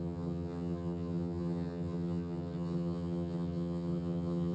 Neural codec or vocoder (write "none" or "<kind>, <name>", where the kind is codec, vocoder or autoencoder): vocoder, HiFi-GAN